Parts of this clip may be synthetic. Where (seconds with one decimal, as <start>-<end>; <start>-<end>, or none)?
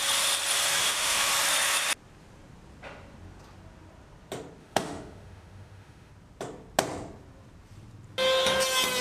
0.8-1.3; 4.6-6.1